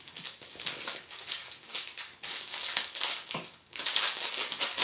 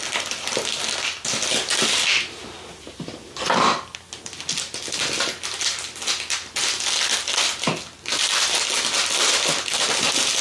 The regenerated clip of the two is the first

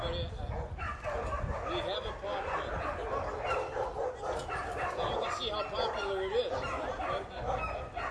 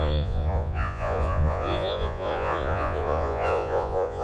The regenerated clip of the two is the second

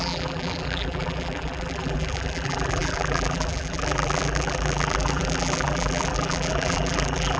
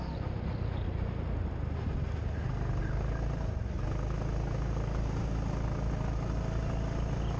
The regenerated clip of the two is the first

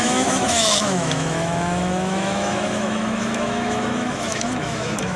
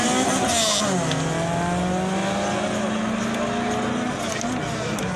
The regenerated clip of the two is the first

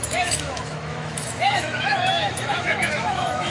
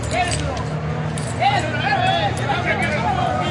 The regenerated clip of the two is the first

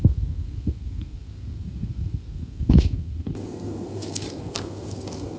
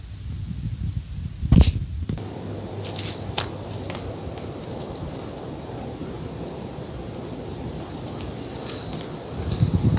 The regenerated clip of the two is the first